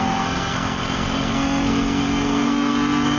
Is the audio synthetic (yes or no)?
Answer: yes